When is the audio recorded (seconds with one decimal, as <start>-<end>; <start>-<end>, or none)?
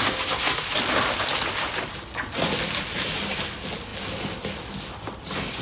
0.0-5.6